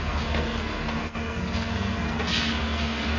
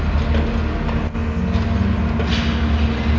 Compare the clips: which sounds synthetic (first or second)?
first